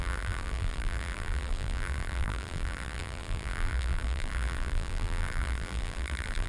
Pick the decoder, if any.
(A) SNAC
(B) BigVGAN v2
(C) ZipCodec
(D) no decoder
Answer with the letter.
B